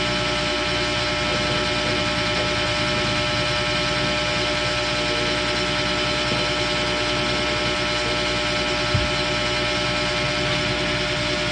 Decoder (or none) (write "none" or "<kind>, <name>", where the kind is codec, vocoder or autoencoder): none